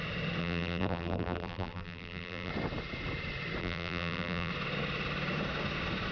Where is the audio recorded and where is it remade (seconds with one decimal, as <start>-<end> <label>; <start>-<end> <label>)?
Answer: 0.0-0.4 recorded; 0.4-2.5 remade; 2.5-3.6 recorded; 3.6-4.5 remade; 4.5-6.1 recorded